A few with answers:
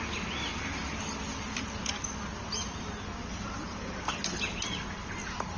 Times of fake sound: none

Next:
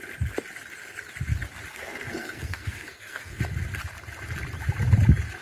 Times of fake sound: 1.7-3.4 (codec, SNAC)

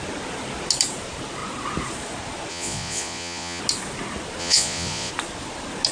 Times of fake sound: 2.5-3.6 (vocoder, Vocos); 4.4-5.1

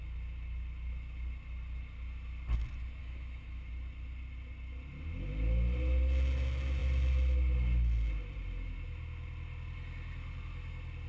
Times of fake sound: 3.0-3.7 (autoencoder, DAC-VAE)